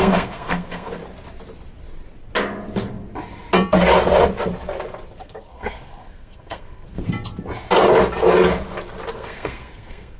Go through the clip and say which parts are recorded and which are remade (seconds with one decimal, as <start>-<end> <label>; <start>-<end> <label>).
0.0-1.0 remade; 1.0-5.2 recorded; 5.2-7.1 remade; 7.1-9.1 recorded; 9.1-10.2 remade